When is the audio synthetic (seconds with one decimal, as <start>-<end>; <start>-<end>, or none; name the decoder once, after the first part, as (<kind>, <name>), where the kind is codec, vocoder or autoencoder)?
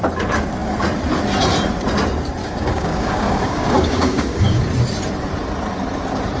2.4-4.6 (codec, DAC)